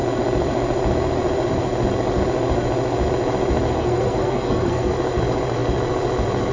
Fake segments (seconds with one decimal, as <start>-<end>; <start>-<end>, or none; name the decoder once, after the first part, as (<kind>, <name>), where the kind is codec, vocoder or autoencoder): 3.8-4.9 (codec, SNAC)